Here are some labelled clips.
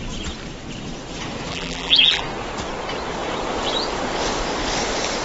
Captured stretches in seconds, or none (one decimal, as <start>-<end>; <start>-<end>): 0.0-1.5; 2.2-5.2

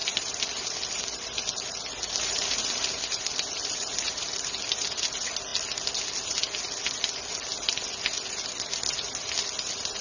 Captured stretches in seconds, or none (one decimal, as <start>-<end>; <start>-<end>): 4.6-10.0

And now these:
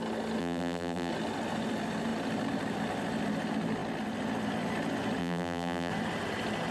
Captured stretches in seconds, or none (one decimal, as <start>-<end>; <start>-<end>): 0.0-0.4; 1.1-5.2; 5.9-6.7

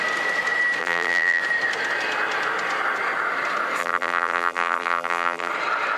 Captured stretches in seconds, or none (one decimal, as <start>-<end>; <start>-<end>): 0.0-0.8; 1.4-3.8; 5.5-6.0